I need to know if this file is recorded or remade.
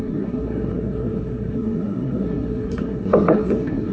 remade